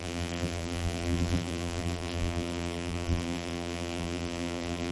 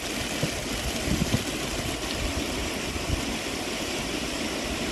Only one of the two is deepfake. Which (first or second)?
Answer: first